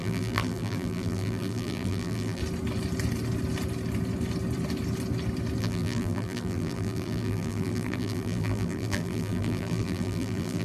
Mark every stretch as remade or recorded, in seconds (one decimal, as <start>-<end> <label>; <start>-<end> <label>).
0.0-2.4 remade; 2.4-5.6 recorded; 5.6-10.6 remade